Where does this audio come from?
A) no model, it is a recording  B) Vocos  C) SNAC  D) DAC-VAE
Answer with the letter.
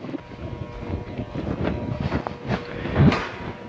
A